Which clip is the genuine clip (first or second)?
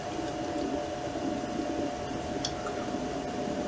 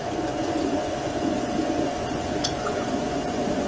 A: first